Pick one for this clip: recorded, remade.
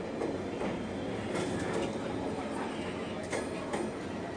recorded